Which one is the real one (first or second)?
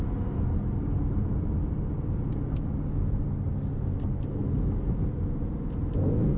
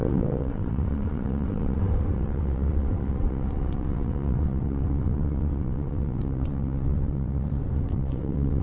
first